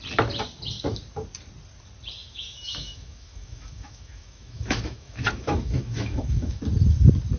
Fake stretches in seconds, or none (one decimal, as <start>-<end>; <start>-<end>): 2.2-6.6